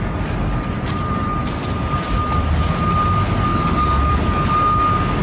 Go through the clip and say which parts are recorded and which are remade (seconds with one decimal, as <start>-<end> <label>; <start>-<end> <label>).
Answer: 0.0-3.5 recorded; 3.5-4.5 remade; 4.5-5.2 recorded